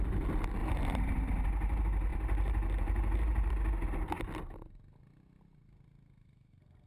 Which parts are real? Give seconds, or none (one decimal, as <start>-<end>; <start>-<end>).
0.0-0.6; 1.2-2.1; 3.5-6.9